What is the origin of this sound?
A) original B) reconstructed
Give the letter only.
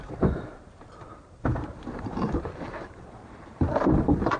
B